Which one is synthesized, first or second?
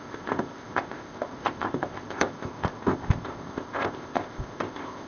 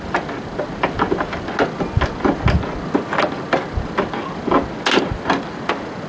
first